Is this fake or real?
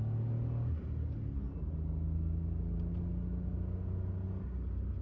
real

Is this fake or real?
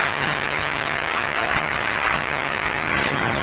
fake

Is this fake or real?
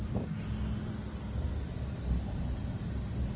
real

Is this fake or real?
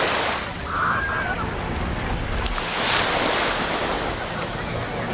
real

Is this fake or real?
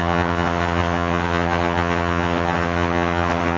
fake